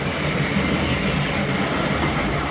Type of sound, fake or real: fake